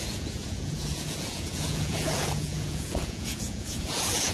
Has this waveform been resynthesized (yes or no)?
yes